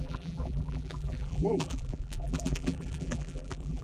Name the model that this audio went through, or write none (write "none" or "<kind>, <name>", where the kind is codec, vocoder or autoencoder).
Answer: vocoder, BigVGAN v2